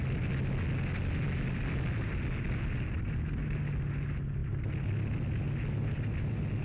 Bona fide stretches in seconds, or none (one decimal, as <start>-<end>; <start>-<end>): 0.0-6.6

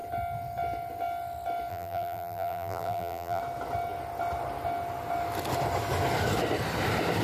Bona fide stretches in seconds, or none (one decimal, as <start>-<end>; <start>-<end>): 0.0-1.7; 3.4-7.2

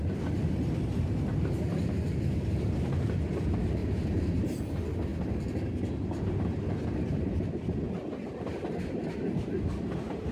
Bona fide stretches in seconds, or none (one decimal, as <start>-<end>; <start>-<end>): 0.0-3.8; 4.6-10.3

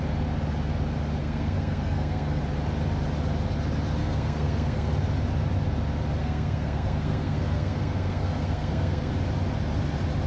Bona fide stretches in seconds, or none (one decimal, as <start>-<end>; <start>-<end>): 0.0-1.2; 2.4-4.0; 4.9-6.2; 9.1-10.3